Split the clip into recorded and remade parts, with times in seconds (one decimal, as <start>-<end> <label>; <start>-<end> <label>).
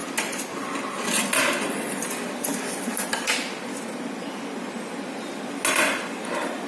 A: 0.0-6.7 recorded